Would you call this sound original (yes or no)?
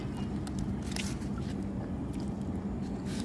yes